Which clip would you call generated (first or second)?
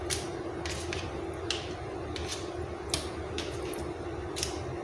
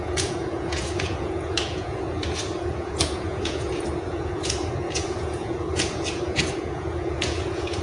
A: second